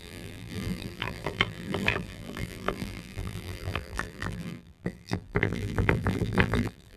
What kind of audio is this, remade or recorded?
remade